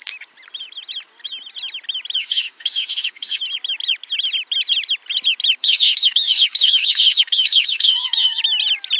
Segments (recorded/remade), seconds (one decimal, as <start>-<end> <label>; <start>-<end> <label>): 0.0-2.2 recorded; 2.2-3.4 remade; 3.4-5.6 recorded; 5.6-8.4 remade; 8.4-9.0 recorded